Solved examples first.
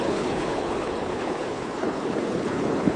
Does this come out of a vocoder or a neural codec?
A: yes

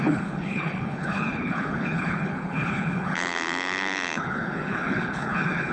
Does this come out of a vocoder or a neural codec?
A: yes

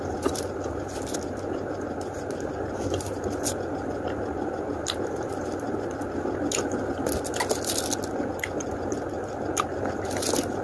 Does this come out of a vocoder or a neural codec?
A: no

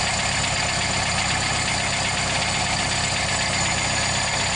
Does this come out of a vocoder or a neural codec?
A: no